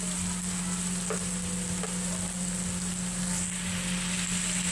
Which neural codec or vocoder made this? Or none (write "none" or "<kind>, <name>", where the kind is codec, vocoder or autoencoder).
none